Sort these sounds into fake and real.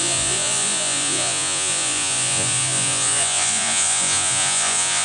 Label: fake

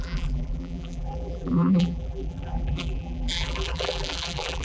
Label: fake